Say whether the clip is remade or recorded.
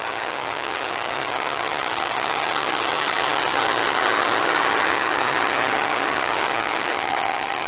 remade